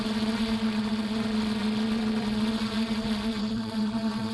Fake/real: fake